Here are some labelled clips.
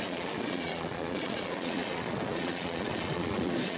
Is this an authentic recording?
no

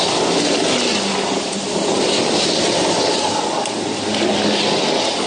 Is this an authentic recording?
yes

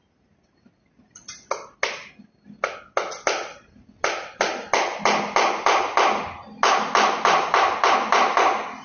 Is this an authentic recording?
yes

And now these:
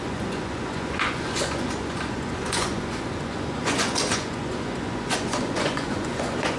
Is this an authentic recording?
no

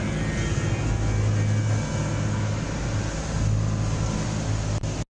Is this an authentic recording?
yes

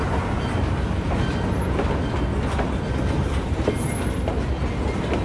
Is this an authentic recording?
yes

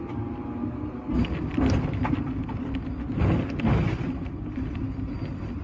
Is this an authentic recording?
yes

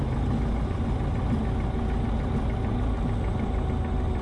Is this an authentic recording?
yes